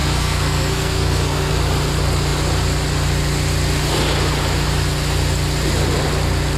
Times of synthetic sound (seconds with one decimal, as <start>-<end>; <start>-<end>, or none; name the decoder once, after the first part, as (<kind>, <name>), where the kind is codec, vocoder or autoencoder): 0.0-1.5 (codec, SNAC)